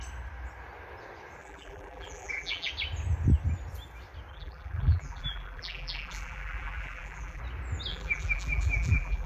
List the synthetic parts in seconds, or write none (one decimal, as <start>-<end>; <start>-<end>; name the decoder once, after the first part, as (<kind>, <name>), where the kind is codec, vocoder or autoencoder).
1.4-2.7 (vocoder, BigVGAN v2); 4.3-7.4; 7.9-9.3